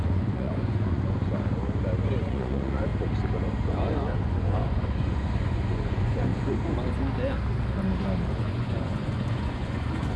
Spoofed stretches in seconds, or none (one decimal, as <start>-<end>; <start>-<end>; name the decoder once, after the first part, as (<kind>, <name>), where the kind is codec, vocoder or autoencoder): 0.0-1.3 (vocoder, Vocos); 2.2-2.9; 3.7-6.3; 8.4-10.2